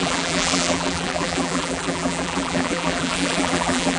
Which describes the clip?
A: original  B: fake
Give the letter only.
B